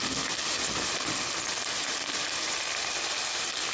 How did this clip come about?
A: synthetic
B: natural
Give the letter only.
B